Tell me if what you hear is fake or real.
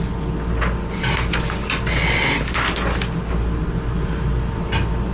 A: real